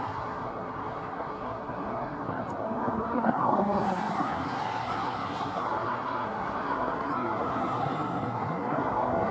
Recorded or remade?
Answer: remade